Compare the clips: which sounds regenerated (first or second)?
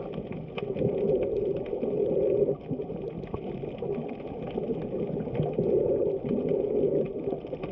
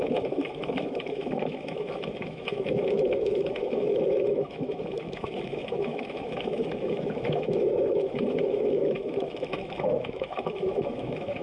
second